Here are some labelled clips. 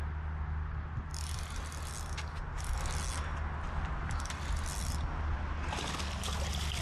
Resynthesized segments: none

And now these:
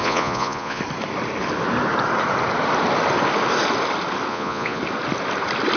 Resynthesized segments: 0.0-0.8; 4.3-4.8

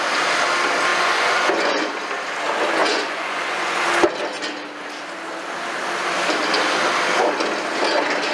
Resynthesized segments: 0.9-1.9; 2.8-3.8

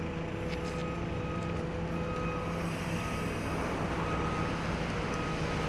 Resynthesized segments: none

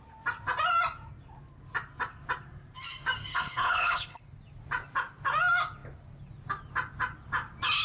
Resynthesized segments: 3.3-4.2

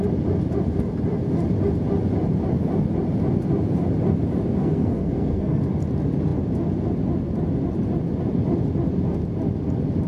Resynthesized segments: 4.6-5.6

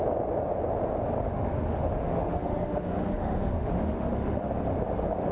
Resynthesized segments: 1.3-4.5

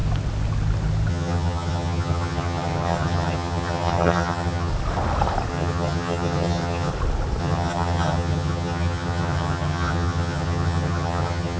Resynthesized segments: 1.1-4.7; 5.5-6.9; 7.4-11.6